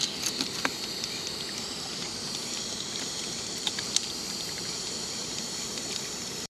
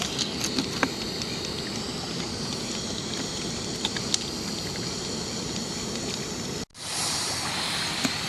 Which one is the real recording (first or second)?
second